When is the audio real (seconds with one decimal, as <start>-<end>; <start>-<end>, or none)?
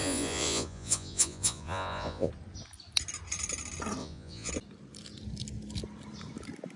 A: 2.3-4.0; 4.5-6.8